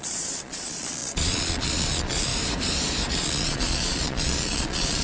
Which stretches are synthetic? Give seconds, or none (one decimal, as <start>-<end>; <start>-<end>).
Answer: 0.0-2.3; 3.1-5.0